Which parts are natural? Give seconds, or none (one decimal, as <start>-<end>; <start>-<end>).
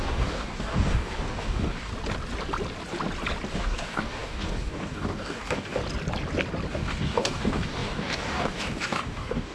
1.9-3.5; 5.8-6.7